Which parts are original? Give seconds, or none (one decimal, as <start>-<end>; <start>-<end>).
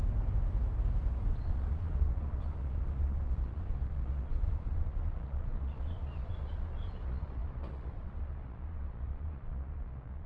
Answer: 0.0-1.3